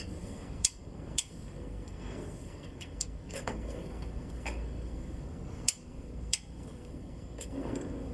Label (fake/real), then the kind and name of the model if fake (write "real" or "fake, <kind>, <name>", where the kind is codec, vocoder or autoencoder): fake, codec, SNAC